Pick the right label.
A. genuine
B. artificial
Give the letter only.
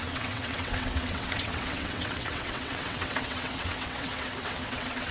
B